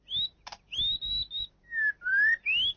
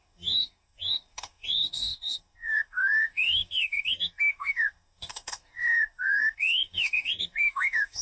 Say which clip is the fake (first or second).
second